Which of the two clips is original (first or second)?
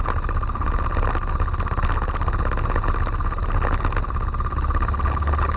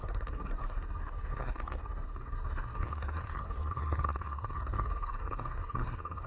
first